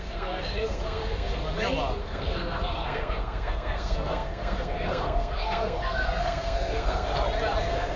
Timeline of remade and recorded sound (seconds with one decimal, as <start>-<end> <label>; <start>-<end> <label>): 0.0-1.4 remade; 1.4-2.0 recorded; 2.0-7.1 remade; 7.1-7.6 recorded; 7.6-8.0 remade